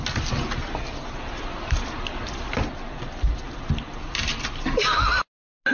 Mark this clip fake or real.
real